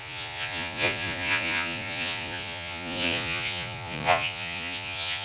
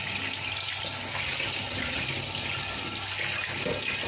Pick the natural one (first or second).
second